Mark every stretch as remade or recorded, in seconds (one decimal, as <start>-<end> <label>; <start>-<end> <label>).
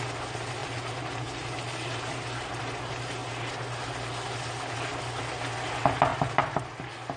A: 0.0-7.2 recorded